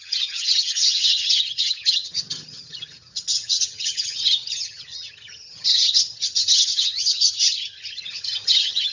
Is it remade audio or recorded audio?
remade